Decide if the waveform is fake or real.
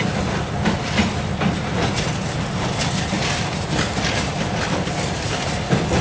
real